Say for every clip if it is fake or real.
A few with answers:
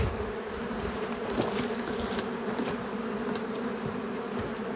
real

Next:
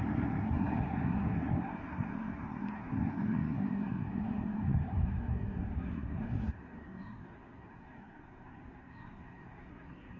fake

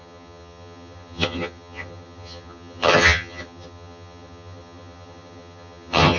fake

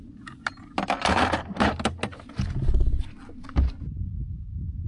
real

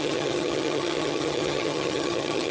fake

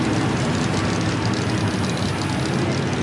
real